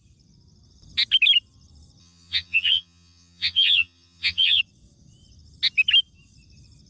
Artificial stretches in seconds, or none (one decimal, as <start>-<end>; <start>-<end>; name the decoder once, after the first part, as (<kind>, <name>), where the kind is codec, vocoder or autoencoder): 2.0-4.6 (vocoder, HiFi-GAN)